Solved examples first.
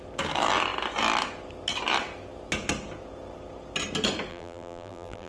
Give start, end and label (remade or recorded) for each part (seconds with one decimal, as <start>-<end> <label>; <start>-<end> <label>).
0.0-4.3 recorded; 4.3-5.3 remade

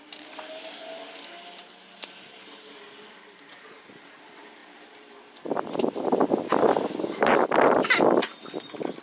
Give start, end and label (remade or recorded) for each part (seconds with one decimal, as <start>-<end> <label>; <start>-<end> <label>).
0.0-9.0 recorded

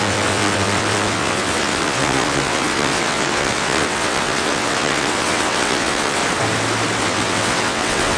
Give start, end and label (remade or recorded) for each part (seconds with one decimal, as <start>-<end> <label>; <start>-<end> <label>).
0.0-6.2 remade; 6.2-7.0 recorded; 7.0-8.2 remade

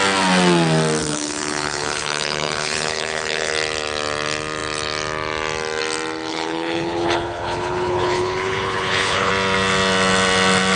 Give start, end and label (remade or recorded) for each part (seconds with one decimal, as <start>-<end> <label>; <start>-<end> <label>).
0.0-1.0 recorded; 1.0-3.5 remade; 3.5-6.3 recorded; 6.3-9.3 remade; 9.3-10.8 recorded

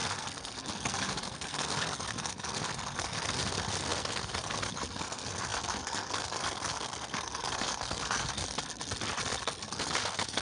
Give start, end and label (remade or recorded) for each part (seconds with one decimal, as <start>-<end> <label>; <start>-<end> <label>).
0.0-8.4 remade; 8.4-9.4 recorded; 9.4-10.4 remade

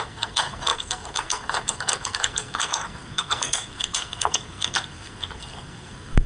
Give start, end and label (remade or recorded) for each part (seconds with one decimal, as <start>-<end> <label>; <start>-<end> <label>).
0.0-6.3 remade

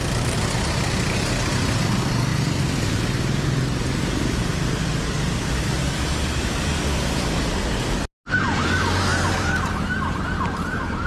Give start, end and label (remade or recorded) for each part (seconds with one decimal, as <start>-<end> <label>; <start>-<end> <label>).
0.0-9.1 recorded; 9.1-11.1 remade

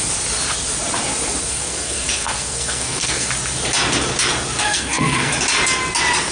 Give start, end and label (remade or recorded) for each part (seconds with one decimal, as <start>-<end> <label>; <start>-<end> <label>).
0.0-1.4 recorded; 1.4-3.3 remade; 3.3-4.6 recorded; 4.6-5.3 remade; 5.3-6.3 recorded